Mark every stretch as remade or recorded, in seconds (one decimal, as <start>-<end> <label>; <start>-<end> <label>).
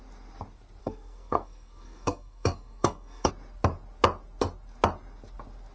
0.0-0.8 recorded; 0.8-3.3 remade; 3.3-5.7 recorded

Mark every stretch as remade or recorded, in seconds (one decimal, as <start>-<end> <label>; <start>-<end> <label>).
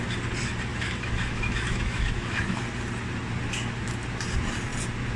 0.0-0.7 recorded; 0.7-2.6 remade; 2.6-5.2 recorded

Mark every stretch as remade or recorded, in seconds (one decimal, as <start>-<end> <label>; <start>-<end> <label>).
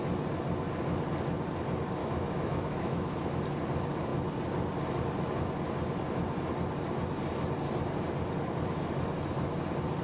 0.0-2.0 recorded; 2.0-3.4 remade; 3.4-10.0 recorded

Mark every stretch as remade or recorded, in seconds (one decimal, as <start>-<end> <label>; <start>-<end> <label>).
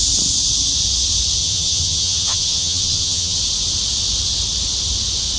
0.0-1.4 recorded; 1.4-3.4 remade; 3.4-5.4 recorded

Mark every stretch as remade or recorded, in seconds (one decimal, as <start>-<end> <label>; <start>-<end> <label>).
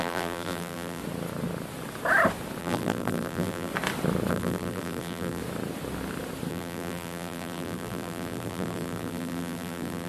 0.0-1.0 remade; 1.0-2.6 recorded; 2.6-3.7 remade; 3.7-4.3 recorded; 4.3-5.4 remade; 5.4-6.5 recorded; 6.5-10.1 remade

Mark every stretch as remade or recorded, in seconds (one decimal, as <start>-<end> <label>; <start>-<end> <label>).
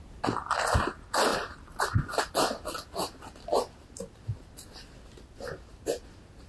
0.0-1.3 recorded; 1.3-2.2 remade; 2.2-6.5 recorded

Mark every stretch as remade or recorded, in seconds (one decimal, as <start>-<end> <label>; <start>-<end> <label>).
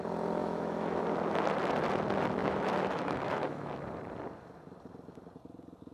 0.0-0.4 recorded; 0.4-1.0 remade; 1.0-2.4 recorded; 2.4-3.7 remade; 3.7-5.9 recorded